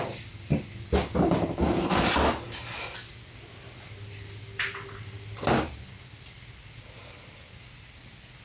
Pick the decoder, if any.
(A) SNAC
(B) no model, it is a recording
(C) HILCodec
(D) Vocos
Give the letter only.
B